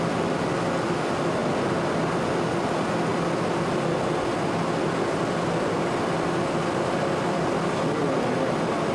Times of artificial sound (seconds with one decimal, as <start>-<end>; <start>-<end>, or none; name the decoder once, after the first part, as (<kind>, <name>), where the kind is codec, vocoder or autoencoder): none